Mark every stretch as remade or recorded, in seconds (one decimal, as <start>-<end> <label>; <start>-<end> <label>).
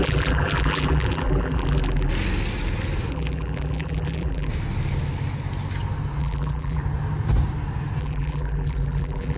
0.0-2.1 remade; 2.1-3.1 recorded; 3.1-4.5 remade; 4.5-6.2 recorded; 6.2-6.8 remade; 6.8-8.0 recorded; 8.0-9.4 remade